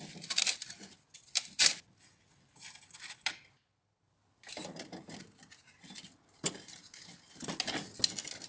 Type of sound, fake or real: real